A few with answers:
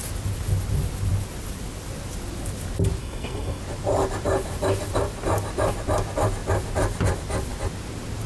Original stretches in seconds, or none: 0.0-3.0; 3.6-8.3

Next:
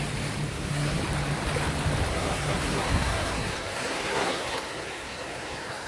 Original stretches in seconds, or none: 0.0-0.5; 1.0-2.1

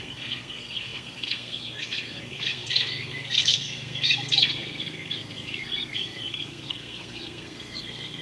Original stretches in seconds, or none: none

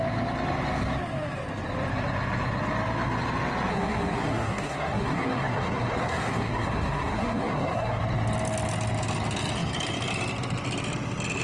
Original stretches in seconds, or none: 0.0-3.7; 8.0-11.4